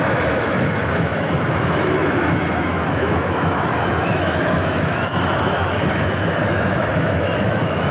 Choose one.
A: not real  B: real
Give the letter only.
A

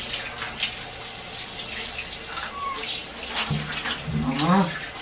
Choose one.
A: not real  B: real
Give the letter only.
B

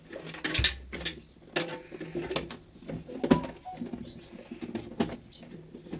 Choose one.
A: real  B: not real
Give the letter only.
A